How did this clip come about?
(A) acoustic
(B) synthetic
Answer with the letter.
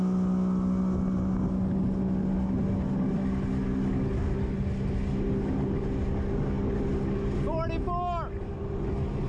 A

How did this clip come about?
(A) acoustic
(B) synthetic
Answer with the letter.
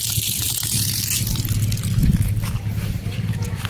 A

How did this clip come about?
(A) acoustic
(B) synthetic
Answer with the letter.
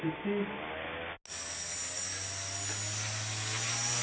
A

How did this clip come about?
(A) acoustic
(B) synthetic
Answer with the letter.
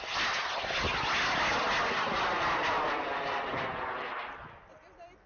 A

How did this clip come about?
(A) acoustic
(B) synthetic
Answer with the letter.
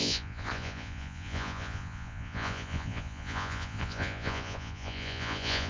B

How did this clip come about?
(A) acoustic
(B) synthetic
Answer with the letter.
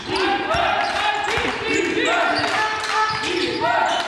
A